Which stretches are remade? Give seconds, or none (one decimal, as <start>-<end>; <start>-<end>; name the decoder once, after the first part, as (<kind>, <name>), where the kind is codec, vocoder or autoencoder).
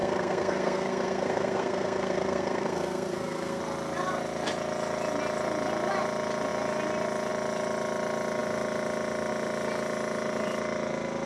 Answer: 0.0-3.6 (codec, SNAC)